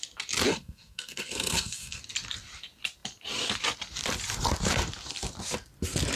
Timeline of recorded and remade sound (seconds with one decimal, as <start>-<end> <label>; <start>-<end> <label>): 0.0-0.5 recorded; 0.5-2.0 remade; 2.0-6.2 recorded